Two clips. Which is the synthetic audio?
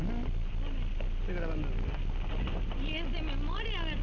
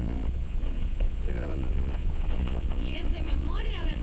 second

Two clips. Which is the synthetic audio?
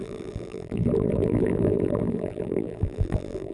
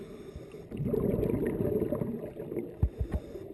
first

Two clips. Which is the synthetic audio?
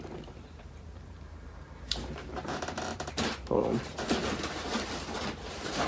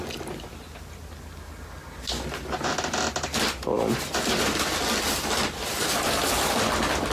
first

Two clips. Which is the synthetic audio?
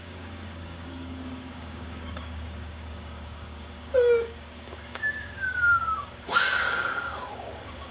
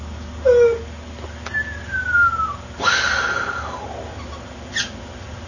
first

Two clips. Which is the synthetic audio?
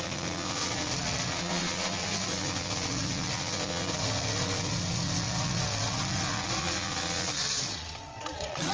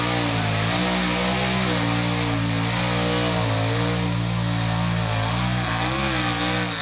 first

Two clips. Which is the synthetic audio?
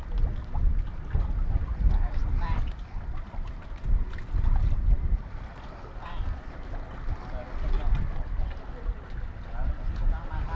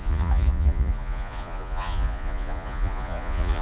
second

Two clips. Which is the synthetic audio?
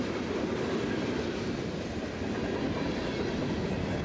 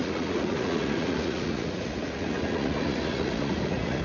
second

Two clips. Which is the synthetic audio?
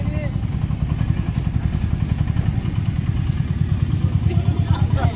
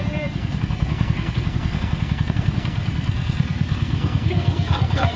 second